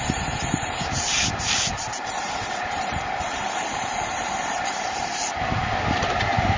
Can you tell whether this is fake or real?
fake